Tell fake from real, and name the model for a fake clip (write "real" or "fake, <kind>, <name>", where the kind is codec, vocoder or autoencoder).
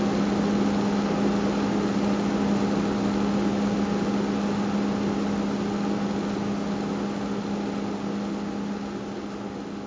real